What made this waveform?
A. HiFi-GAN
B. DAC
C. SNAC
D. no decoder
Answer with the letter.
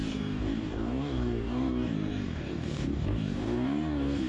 B